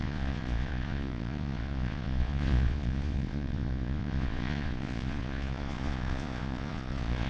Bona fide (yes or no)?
no